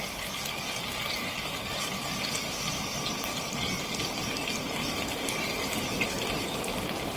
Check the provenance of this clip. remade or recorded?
recorded